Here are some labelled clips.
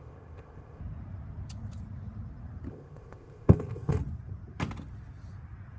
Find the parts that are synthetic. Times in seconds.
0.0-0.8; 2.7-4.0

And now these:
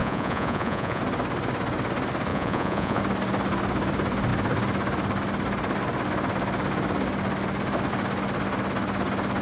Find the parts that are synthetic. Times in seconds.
0.0-1.0; 2.3-3.0

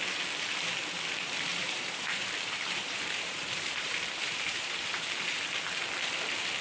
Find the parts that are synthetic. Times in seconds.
1.5-5.5

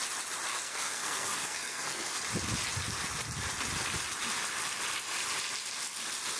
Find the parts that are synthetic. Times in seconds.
0.5-2.2

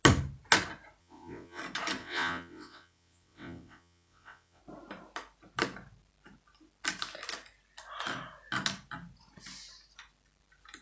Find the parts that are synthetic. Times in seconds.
1.0-1.6; 2.0-4.6